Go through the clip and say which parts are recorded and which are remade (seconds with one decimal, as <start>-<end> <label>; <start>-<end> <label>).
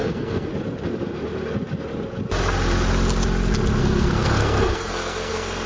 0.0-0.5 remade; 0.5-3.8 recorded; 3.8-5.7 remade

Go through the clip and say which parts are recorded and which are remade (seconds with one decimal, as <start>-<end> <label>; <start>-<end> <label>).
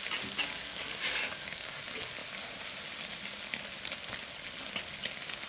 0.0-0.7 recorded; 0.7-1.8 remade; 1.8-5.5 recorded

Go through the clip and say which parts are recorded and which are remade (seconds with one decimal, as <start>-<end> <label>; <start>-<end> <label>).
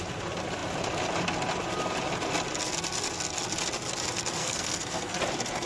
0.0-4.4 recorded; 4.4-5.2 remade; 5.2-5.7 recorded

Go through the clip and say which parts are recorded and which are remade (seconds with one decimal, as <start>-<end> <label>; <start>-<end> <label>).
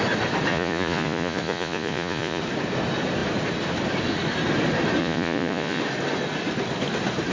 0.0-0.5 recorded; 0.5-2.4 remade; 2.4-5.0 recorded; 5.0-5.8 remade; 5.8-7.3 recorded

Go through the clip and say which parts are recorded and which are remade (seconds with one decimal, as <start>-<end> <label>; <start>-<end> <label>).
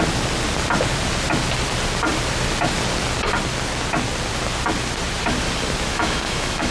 0.0-5.9 recorded; 5.9-6.7 remade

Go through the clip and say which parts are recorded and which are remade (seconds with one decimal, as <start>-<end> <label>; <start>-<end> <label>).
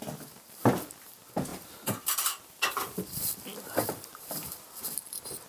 0.0-1.5 recorded; 1.5-4.8 remade; 4.8-5.5 recorded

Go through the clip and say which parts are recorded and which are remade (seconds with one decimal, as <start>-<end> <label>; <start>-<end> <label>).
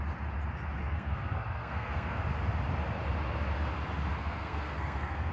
0.0-0.8 recorded; 0.8-2.2 remade; 2.2-4.2 recorded; 4.2-5.3 remade